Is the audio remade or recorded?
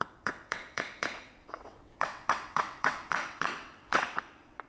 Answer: remade